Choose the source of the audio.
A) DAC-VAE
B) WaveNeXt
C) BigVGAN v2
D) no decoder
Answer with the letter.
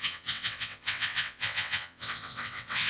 B